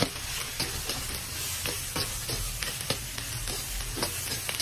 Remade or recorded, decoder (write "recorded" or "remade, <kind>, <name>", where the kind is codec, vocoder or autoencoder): recorded